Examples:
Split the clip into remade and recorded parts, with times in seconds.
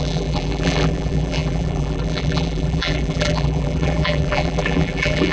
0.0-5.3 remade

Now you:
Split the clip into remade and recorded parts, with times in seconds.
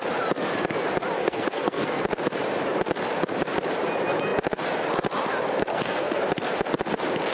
0.0-1.2 recorded; 1.2-2.0 remade; 2.0-5.7 recorded; 5.7-6.2 remade; 6.2-7.3 recorded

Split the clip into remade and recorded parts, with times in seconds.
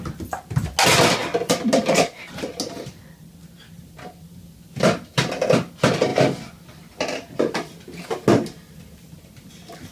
0.0-9.9 recorded